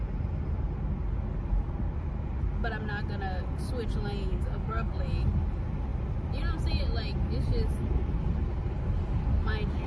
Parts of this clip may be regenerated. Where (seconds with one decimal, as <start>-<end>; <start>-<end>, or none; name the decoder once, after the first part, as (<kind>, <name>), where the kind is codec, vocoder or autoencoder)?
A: 4.3-5.0 (codec, DAC)